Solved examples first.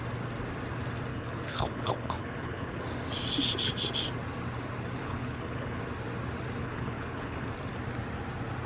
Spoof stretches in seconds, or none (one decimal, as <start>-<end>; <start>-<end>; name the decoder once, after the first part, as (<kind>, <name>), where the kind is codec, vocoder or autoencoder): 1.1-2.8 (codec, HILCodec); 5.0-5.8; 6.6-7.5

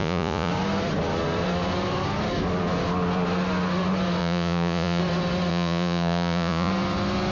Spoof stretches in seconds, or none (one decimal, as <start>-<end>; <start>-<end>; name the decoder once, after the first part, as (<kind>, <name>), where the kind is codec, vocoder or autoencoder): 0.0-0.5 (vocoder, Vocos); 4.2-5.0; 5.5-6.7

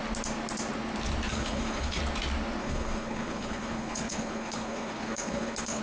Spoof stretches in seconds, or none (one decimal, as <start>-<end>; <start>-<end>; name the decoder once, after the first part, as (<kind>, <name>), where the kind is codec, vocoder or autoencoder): 1.3-2.0 (codec, HILCodec); 2.6-5.8

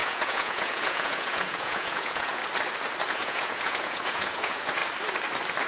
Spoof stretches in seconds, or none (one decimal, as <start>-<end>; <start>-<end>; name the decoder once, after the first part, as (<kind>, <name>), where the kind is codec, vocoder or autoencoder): 0.0-2.4 (vocoder, Vocos); 3.1-4.8